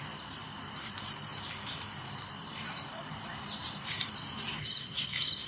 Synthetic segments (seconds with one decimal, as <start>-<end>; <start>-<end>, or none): 0.0-5.5